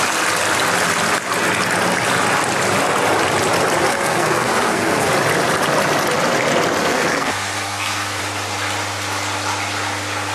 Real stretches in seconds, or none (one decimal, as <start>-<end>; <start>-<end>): 0.0-3.9; 5.1-6.8; 8.2-10.3